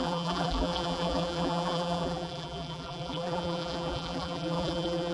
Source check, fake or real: fake